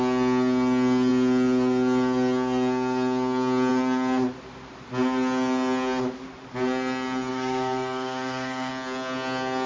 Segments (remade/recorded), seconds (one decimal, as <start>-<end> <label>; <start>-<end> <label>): 0.0-7.3 recorded; 7.3-8.7 remade; 8.7-9.7 recorded